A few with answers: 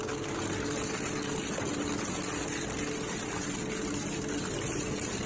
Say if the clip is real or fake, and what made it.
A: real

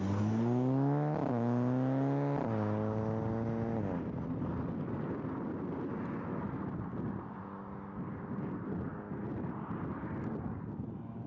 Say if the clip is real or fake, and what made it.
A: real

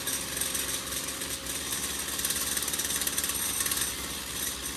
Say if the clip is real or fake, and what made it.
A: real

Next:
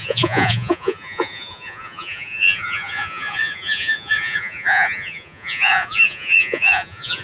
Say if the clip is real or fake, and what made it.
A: fake, vocoder, Vocos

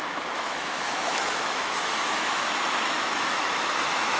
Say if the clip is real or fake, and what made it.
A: fake, autoencoder, DAC-VAE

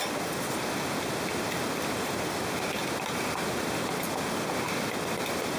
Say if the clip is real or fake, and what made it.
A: fake, vocoder, BigVGAN v2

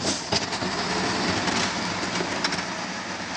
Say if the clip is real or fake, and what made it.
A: real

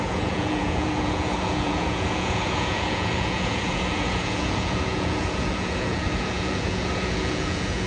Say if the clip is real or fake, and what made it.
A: fake, vocoder, Vocos